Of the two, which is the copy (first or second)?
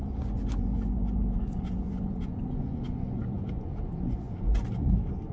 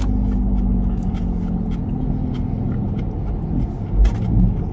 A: first